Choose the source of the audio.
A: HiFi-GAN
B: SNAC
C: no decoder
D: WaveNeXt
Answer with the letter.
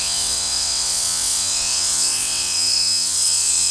D